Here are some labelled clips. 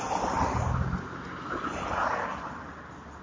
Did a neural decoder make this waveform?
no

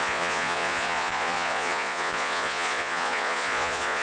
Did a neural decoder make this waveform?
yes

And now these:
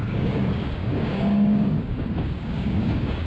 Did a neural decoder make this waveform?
yes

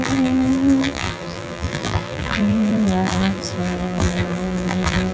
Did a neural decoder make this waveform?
yes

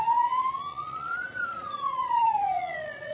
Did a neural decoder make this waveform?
yes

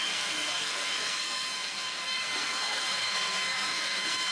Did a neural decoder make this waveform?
yes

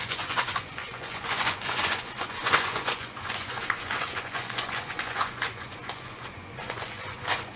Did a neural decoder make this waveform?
yes